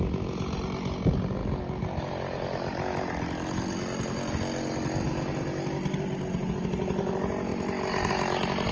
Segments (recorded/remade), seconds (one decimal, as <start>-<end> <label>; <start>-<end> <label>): 0.0-8.7 recorded